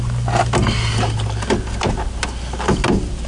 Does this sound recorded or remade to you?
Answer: recorded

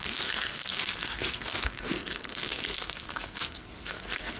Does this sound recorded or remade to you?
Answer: remade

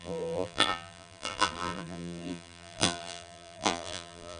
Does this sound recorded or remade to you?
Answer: remade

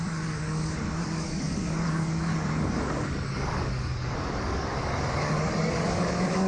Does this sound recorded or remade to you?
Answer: remade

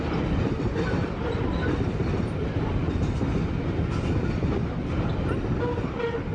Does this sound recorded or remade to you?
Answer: recorded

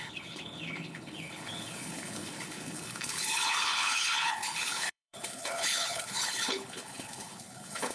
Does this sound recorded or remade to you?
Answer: remade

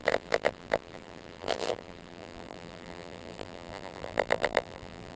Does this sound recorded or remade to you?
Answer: remade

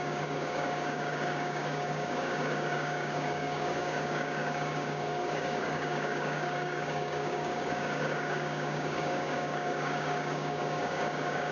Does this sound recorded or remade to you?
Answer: remade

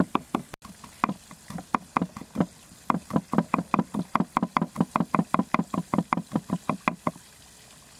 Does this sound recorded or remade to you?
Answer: remade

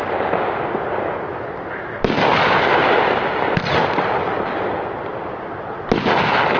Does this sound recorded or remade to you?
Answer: recorded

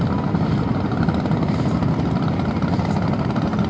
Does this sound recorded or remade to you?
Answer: recorded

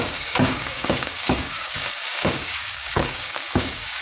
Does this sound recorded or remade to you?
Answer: remade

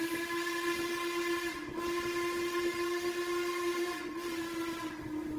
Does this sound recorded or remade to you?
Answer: recorded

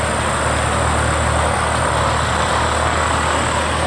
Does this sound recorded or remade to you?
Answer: recorded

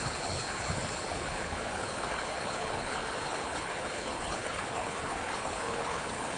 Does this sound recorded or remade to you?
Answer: remade